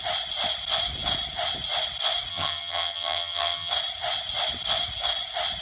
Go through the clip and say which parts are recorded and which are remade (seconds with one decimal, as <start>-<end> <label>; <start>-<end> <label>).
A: 0.0-2.3 recorded; 2.3-3.7 remade; 3.7-5.6 recorded